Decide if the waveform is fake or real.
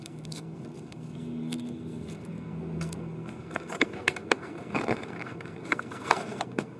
fake